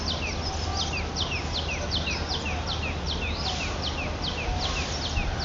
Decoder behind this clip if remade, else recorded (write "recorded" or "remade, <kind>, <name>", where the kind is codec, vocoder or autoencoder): recorded